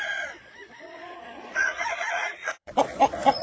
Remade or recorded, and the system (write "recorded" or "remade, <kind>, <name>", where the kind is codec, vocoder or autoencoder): remade, vocoder, Vocos